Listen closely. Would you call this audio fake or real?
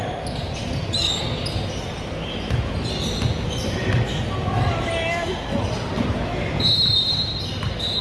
real